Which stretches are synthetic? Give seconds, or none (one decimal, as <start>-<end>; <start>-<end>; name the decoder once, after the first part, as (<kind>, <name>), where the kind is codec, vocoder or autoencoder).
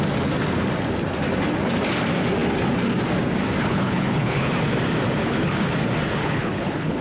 3.6-4.5 (codec, HILCodec); 5.2-5.7; 6.2-7.0